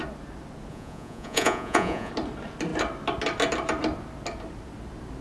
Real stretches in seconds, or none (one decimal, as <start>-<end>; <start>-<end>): 0.0-0.7; 2.1-5.2